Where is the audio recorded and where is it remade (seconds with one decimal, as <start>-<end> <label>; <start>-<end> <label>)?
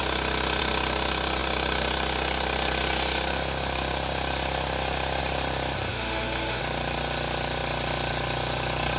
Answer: 0.0-5.9 recorded; 5.9-6.6 remade; 6.6-9.0 recorded